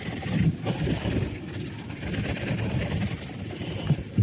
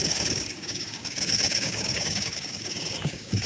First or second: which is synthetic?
second